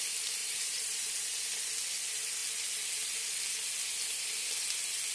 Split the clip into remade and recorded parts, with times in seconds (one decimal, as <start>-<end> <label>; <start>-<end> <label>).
0.0-0.4 recorded; 0.4-1.1 remade; 1.1-5.1 recorded